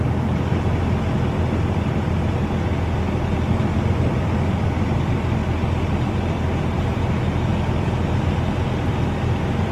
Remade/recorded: recorded